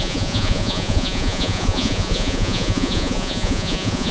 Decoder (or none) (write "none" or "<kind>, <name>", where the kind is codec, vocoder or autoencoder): vocoder, Vocos